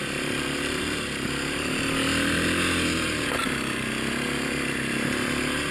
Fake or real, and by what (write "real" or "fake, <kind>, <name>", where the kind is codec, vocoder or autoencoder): real